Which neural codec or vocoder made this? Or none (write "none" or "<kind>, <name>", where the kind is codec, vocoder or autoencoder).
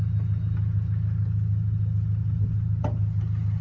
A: none